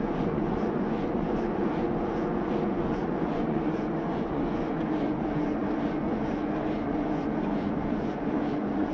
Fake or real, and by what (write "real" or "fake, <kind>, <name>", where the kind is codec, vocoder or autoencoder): fake, vocoder, Vocos